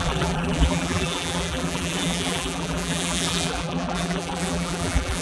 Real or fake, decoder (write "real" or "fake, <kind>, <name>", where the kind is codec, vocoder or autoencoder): fake, vocoder, BigVGAN v2